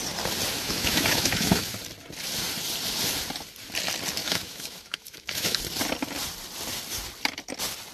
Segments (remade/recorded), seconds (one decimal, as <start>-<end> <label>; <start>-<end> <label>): 0.0-0.5 recorded; 0.5-1.7 remade; 1.7-4.2 recorded; 4.2-5.6 remade; 5.6-7.9 recorded